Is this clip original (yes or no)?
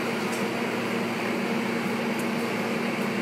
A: yes